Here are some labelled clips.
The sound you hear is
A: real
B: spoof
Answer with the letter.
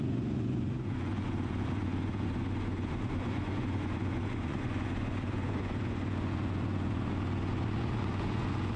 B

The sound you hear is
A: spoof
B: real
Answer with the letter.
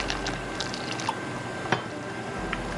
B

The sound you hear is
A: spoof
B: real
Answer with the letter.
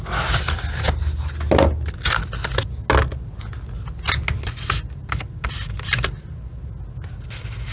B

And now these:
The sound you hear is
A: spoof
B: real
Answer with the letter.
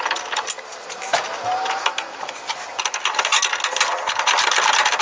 B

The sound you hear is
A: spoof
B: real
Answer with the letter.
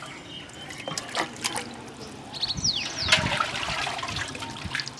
B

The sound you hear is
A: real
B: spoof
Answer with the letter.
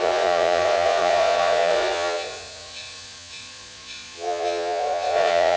B